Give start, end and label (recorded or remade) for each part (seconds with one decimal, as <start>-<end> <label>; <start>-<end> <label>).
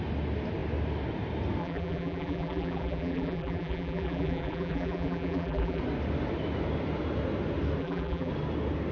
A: 0.0-1.6 recorded; 1.6-5.8 remade; 5.8-7.8 recorded; 7.8-8.3 remade; 8.3-8.9 recorded